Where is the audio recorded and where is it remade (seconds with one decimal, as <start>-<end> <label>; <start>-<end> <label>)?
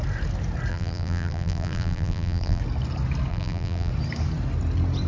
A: 0.0-0.7 recorded; 0.7-2.6 remade; 2.6-3.3 recorded; 3.3-3.9 remade; 3.9-5.1 recorded